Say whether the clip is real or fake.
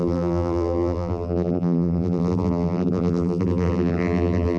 fake